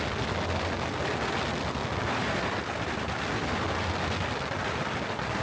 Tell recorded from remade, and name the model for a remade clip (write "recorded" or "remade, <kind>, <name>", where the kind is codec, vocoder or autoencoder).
recorded